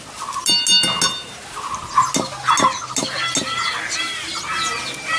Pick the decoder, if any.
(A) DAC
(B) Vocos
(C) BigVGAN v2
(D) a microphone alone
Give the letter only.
D